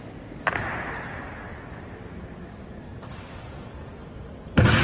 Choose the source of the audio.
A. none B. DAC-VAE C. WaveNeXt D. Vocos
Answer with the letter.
A